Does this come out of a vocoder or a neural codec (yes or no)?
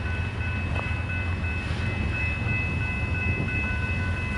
no